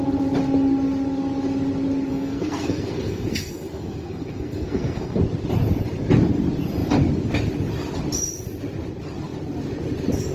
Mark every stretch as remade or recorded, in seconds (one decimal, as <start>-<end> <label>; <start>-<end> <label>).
0.0-2.1 recorded; 2.1-5.2 remade; 5.2-10.3 recorded